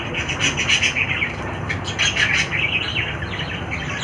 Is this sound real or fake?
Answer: real